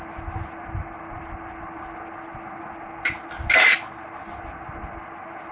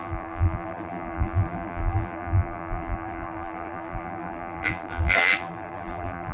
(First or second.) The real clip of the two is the first